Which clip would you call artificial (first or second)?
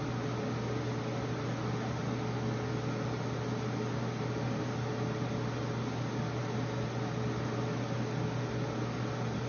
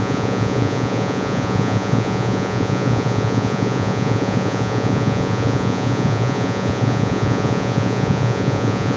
second